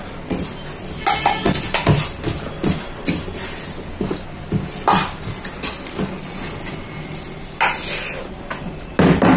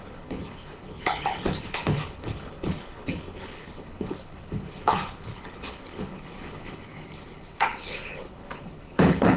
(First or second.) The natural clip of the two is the first